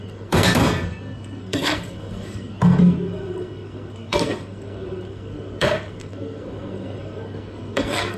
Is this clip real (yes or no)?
no